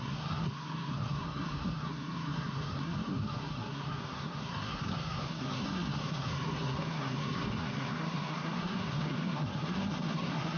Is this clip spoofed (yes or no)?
yes